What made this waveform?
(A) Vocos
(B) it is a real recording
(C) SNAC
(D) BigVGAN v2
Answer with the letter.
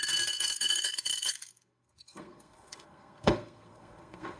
C